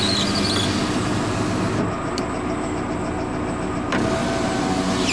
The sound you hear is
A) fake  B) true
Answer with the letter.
B